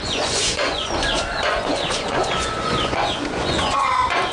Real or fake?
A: fake